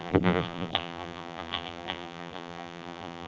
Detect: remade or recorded remade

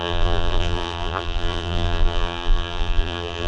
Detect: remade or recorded remade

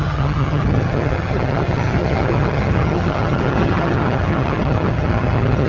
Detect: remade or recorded remade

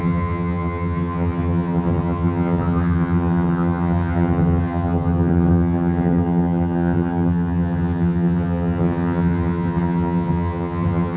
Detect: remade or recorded remade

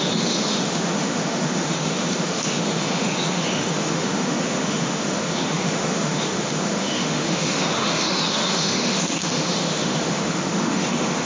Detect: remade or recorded remade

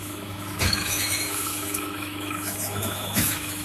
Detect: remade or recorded remade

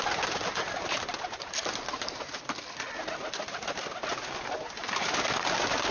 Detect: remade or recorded recorded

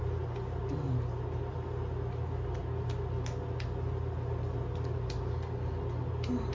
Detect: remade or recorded recorded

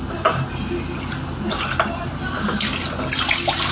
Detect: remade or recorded recorded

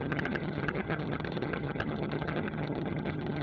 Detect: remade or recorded remade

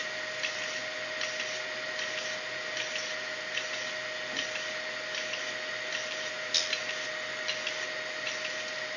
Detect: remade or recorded recorded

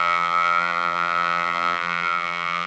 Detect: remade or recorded remade